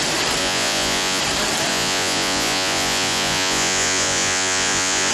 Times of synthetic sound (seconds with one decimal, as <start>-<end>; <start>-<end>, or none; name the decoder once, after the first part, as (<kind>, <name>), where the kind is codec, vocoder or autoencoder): 0.4-1.2 (vocoder, Vocos); 1.7-5.1